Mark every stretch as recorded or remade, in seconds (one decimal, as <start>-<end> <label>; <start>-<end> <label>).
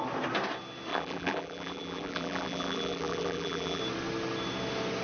0.0-0.9 recorded; 0.9-3.8 remade; 3.8-5.0 recorded